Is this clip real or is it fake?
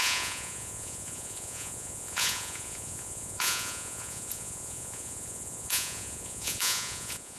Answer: fake